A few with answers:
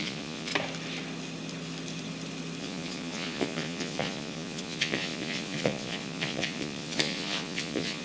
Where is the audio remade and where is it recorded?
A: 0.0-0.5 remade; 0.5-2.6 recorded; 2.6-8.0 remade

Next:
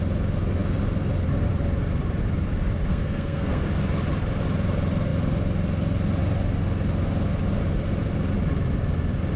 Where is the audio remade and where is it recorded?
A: 0.0-2.9 recorded; 2.9-3.6 remade; 3.6-9.4 recorded